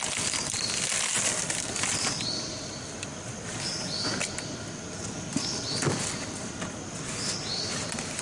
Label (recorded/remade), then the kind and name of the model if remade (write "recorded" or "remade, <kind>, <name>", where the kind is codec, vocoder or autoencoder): recorded